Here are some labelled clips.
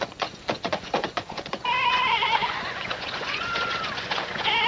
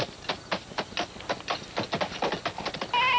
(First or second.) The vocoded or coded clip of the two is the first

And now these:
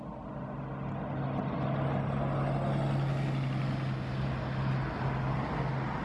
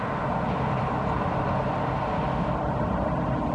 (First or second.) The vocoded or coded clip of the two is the second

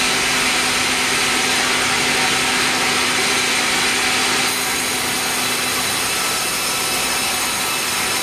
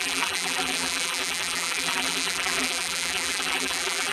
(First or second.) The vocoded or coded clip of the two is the second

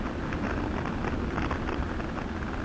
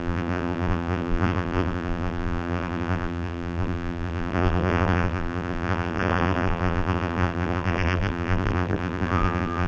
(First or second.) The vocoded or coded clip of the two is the second